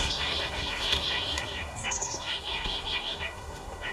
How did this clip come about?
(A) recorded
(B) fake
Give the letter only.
B